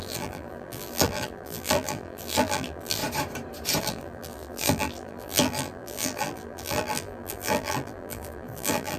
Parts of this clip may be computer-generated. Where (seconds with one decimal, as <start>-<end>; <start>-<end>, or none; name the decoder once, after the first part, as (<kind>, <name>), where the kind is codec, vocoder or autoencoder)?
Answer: 0.0-3.0 (vocoder, BigVGAN v2); 3.8-9.0